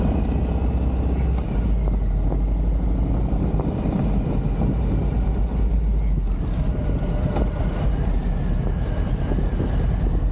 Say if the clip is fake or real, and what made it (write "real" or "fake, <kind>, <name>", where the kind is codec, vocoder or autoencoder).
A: real